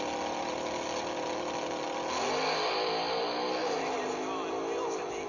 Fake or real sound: real